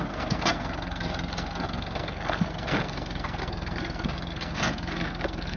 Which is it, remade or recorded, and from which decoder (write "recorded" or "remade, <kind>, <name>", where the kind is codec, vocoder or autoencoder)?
remade, codec, SNAC